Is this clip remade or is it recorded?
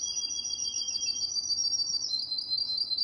recorded